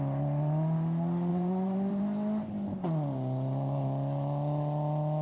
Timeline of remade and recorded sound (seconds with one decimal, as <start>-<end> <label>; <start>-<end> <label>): 0.0-1.3 recorded; 1.3-2.0 remade; 2.0-5.2 recorded